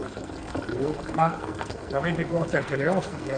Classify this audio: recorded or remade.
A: remade